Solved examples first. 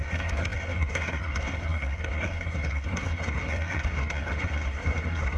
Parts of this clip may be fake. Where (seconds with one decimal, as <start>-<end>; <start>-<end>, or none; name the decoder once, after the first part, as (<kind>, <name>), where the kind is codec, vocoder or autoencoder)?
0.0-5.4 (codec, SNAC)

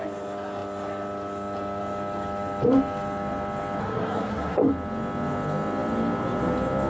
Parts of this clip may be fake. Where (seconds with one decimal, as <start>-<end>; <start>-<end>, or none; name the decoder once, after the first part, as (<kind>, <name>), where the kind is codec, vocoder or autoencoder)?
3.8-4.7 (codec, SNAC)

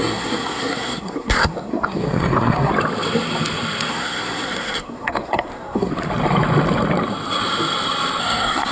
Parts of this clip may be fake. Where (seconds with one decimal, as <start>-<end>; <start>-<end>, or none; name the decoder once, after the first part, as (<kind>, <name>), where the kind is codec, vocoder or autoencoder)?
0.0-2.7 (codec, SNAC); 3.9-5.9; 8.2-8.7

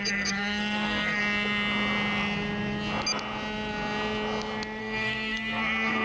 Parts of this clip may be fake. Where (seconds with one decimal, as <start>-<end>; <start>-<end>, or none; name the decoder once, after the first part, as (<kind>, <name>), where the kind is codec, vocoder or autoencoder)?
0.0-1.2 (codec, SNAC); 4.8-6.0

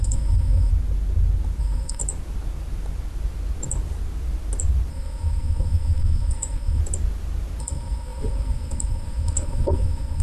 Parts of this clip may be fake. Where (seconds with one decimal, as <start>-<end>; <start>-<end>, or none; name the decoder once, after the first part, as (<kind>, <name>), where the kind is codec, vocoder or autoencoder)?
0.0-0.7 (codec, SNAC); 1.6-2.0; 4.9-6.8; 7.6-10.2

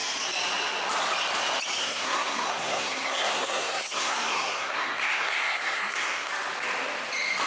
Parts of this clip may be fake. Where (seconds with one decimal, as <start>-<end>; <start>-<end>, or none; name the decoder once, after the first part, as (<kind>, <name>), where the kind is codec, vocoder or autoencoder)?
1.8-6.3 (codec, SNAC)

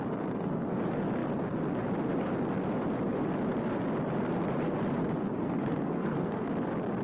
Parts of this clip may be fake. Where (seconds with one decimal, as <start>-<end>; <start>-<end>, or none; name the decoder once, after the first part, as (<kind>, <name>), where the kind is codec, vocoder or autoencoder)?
5.4-6.5 (codec, SNAC)